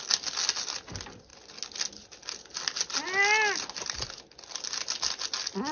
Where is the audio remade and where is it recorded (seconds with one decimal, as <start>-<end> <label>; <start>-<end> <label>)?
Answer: 0.0-5.7 recorded